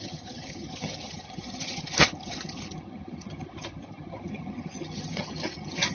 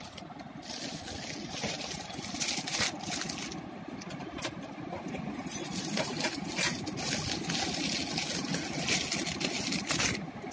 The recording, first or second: second